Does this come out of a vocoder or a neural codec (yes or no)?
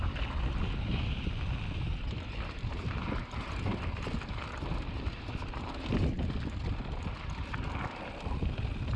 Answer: no